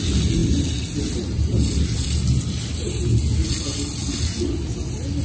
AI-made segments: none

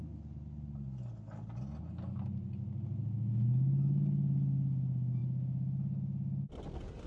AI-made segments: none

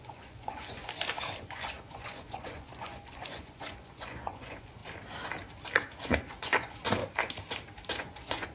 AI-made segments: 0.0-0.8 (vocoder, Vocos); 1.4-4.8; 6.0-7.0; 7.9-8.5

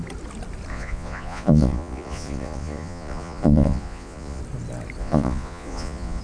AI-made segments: 0.7-4.4 (vocoder, Vocos); 5.0-6.2

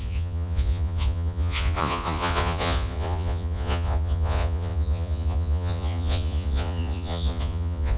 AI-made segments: 0.0-8.0 (vocoder, Vocos)

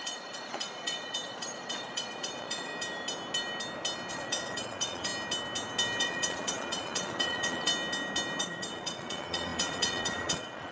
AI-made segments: 0.0-2.7 (vocoder, Vocos); 4.1-5.1; 6.0-7.7; 8.4-10.7

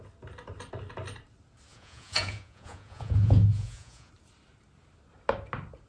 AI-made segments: 1.7-4.1 (vocoder, Vocos)

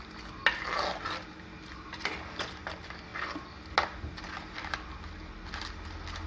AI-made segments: none